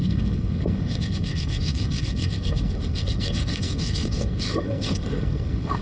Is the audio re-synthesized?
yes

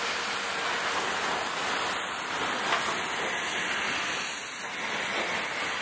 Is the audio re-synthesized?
no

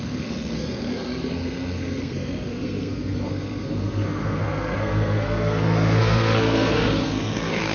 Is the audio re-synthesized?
yes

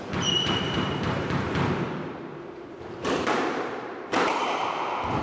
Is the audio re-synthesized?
yes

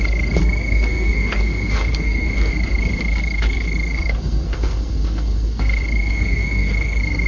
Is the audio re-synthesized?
yes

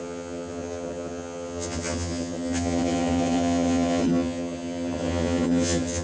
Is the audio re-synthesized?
yes